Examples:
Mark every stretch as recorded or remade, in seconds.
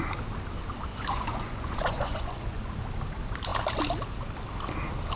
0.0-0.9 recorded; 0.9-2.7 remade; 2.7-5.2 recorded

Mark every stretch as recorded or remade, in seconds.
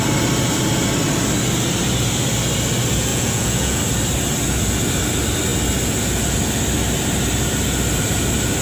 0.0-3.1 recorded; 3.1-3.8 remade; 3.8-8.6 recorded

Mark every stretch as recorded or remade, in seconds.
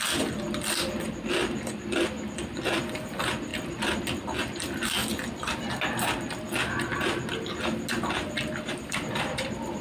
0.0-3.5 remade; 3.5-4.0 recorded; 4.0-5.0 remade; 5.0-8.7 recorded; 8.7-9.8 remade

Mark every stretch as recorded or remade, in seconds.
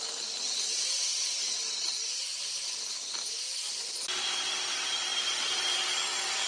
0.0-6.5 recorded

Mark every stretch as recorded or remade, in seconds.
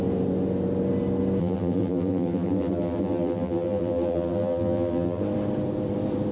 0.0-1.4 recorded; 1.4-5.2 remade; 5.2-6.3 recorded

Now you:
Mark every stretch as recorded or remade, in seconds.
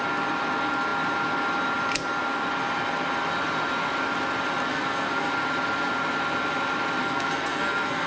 0.0-4.7 recorded; 4.7-5.3 remade; 5.3-7.0 recorded; 7.0-8.1 remade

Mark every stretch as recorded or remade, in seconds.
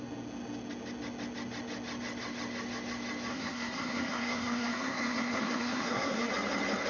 0.0-3.3 recorded; 3.3-6.3 remade; 6.3-6.9 recorded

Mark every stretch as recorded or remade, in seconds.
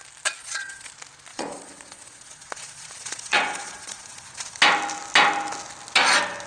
0.0-0.4 recorded; 0.4-0.9 remade; 0.9-1.3 recorded; 1.3-4.6 remade; 4.6-6.5 recorded